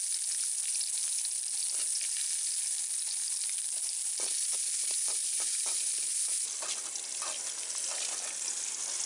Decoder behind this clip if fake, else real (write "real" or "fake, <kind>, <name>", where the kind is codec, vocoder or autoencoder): real